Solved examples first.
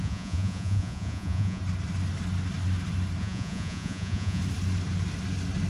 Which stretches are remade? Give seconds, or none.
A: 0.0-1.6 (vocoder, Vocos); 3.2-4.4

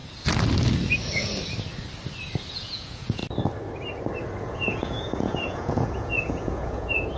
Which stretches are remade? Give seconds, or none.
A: 2.5-3.2 (vocoder, Vocos); 4.4-7.2

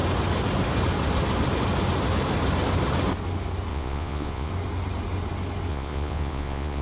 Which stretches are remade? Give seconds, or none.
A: 3.7-4.5 (vocoder, Vocos); 5.7-6.8

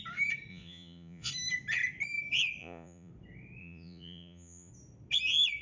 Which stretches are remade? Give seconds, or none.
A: 0.5-1.3 (vocoder, Vocos); 2.6-3.1; 3.6-4.7

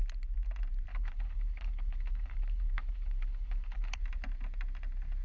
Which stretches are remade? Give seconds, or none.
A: 0.9-4.0 (codec, HILCodec)

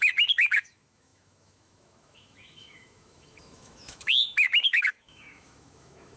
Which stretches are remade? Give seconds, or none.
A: 0.0-6.2 (autoencoder, DAC-VAE)

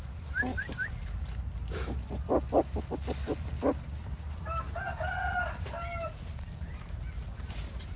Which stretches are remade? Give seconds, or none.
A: none